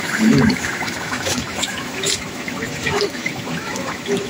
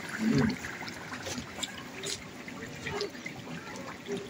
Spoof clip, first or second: first